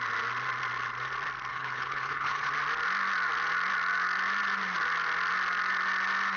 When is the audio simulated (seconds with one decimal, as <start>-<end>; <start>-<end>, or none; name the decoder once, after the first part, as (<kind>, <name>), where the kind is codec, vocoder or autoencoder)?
1.5-2.5 (codec, HILCodec)